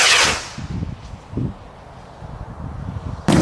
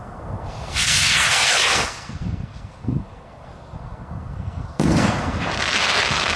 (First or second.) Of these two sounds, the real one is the first